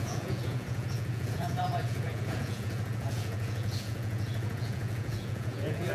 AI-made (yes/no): yes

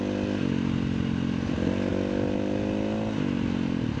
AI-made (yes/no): no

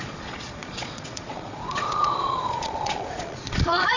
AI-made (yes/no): yes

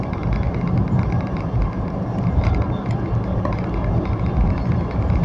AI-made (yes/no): no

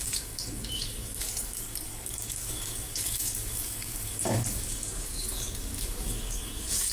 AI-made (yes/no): yes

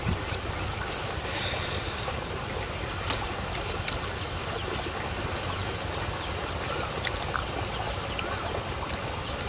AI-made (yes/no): no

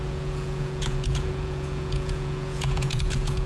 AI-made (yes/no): yes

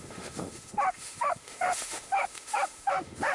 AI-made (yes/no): yes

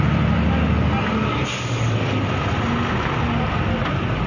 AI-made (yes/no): no